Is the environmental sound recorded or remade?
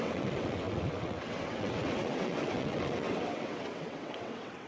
remade